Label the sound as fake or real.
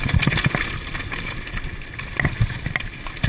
real